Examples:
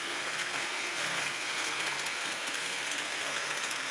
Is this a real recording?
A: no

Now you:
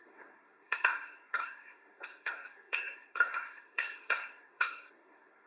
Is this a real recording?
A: no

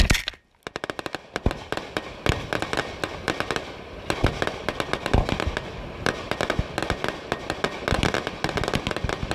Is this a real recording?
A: yes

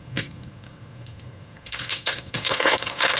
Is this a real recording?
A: no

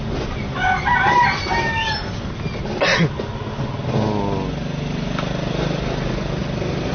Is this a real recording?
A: yes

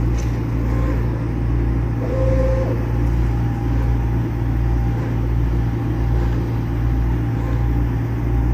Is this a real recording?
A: yes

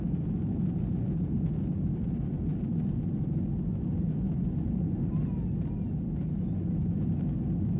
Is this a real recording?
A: yes